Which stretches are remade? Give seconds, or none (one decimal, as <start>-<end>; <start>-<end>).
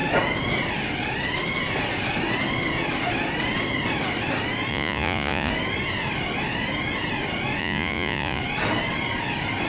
4.7-5.5; 7.6-8.4